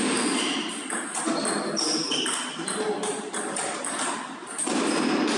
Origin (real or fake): real